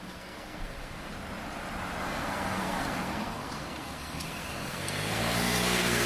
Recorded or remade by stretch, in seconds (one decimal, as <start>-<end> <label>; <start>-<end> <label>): 0.0-1.1 remade; 1.1-2.0 recorded; 2.0-6.1 remade